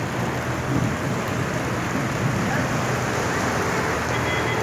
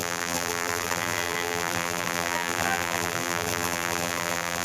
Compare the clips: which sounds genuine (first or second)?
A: first